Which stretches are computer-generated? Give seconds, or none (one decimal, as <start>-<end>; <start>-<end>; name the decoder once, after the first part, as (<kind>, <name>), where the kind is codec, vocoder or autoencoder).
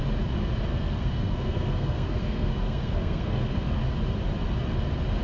0.7-3.8 (codec, SNAC)